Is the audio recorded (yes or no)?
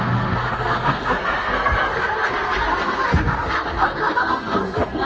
no